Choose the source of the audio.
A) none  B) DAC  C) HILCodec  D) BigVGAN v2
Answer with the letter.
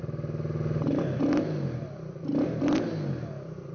A